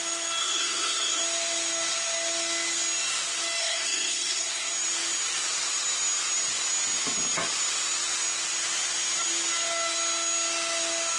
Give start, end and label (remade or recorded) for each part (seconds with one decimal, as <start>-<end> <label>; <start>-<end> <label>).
0.0-0.4 recorded; 0.4-1.2 remade; 1.2-3.6 recorded; 3.6-4.7 remade; 4.7-11.2 recorded